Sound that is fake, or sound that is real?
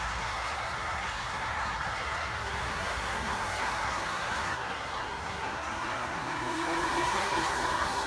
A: fake